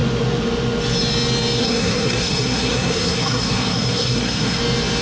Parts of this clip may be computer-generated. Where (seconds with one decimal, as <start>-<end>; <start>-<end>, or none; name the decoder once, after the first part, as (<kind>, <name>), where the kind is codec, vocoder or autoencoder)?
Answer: 1.6-4.6 (codec, SNAC)